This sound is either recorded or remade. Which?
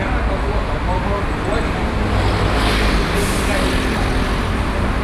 recorded